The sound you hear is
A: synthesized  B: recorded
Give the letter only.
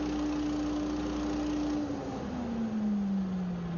B